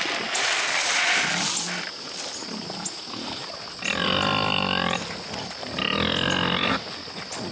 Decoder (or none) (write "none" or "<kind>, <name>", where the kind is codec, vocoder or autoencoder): none